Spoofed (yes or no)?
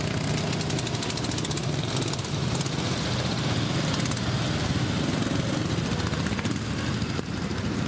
no